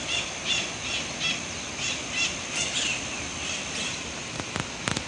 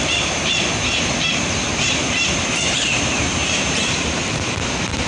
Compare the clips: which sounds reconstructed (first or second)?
second